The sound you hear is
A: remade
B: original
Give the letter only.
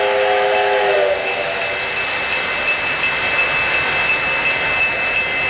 B